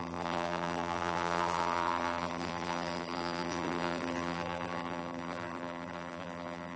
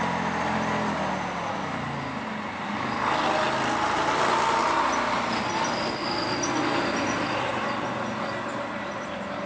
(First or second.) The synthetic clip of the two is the first